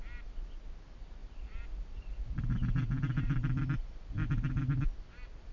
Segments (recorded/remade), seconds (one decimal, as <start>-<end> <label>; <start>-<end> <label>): 0.0-1.2 recorded; 1.2-4.5 remade; 4.5-5.5 recorded